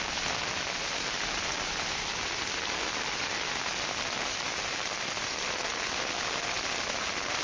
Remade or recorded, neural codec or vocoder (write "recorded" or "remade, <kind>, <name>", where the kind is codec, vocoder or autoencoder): recorded